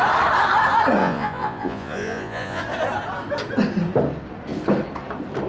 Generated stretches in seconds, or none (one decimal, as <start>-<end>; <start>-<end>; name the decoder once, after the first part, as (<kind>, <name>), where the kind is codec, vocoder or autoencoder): 1.0-2.6 (vocoder, Vocos)